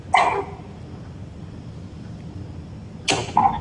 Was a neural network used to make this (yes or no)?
no